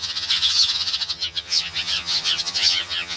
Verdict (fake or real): fake